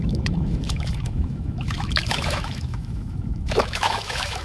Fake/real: fake